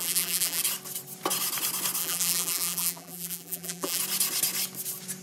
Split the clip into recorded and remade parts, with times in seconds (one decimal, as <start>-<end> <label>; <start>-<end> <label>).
0.0-0.6 remade; 0.6-2.0 recorded; 2.0-4.0 remade; 4.0-5.2 recorded